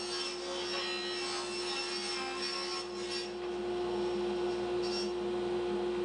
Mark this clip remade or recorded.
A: recorded